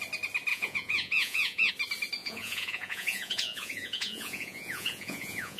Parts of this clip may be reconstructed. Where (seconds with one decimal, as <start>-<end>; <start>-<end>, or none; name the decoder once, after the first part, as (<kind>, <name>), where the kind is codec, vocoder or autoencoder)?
0.5-1.7 (vocoder, Vocos); 2.2-5.6